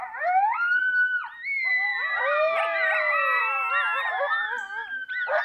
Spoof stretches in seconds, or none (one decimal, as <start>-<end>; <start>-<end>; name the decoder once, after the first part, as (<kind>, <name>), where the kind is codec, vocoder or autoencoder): none